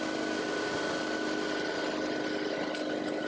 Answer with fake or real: real